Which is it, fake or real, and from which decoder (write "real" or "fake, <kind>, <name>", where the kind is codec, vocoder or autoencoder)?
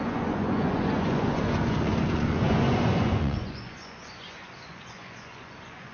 fake, vocoder, Vocos